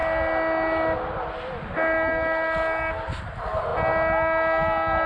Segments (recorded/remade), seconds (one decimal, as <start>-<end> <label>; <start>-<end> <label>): 0.0-5.1 recorded